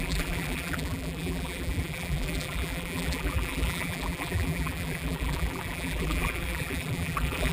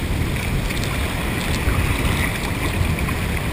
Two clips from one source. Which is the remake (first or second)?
first